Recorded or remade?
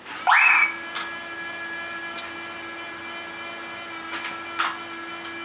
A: recorded